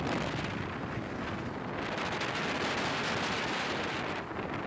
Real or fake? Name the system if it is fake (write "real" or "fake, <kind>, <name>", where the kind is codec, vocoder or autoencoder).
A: real